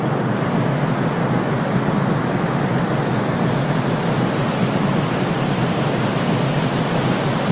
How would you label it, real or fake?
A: real